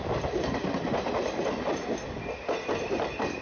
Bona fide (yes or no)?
yes